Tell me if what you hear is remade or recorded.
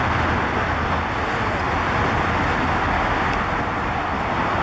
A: recorded